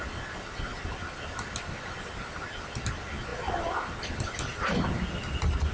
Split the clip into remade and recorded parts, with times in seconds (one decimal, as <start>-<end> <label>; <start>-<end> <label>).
0.0-5.7 recorded